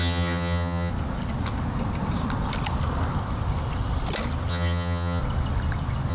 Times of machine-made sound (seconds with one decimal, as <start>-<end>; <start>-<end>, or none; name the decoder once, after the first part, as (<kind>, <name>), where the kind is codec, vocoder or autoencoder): 0.0-0.9 (vocoder, HiFi-GAN); 4.5-5.2